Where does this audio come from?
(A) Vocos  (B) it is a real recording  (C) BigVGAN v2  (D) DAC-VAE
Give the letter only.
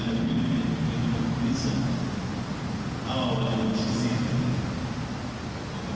B